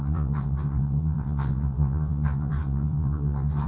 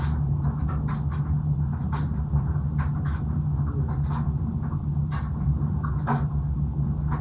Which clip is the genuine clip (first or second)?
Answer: second